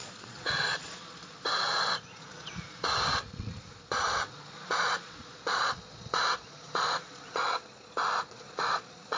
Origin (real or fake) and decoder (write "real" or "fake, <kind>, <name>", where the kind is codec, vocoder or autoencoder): fake, vocoder, Vocos